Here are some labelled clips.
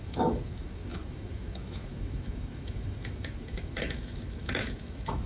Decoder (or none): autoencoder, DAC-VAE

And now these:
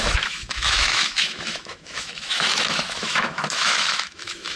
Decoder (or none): autoencoder, DAC-VAE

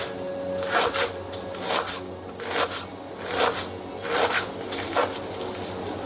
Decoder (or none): none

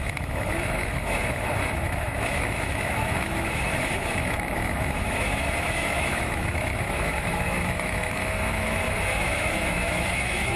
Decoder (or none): autoencoder, DAC-VAE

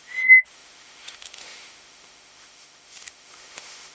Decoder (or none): autoencoder, DAC-VAE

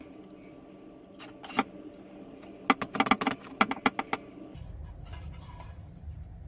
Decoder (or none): none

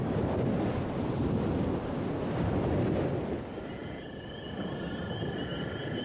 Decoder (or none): none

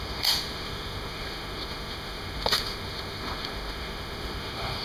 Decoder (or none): autoencoder, DAC-VAE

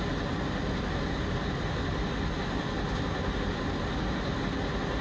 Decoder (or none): none